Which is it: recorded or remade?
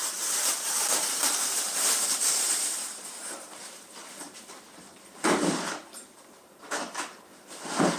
remade